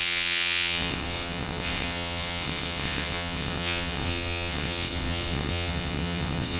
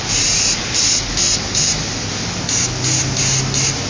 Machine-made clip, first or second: first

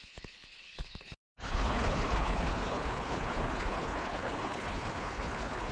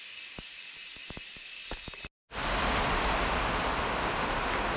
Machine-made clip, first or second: first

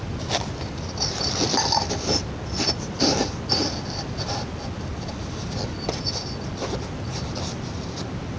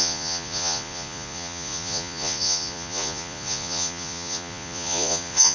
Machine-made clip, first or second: second